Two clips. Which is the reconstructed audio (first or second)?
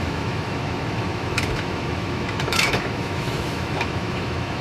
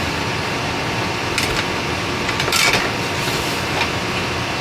first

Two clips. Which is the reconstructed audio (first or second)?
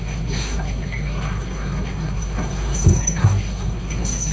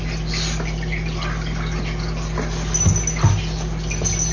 first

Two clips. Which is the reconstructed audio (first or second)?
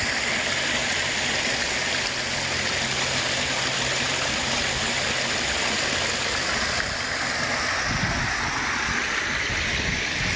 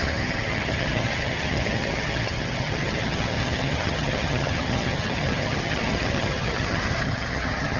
second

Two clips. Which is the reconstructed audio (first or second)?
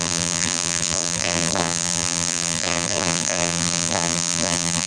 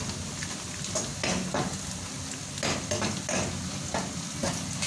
first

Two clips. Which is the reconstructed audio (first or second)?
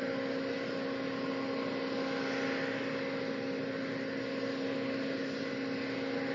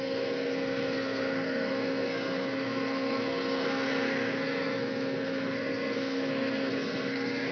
second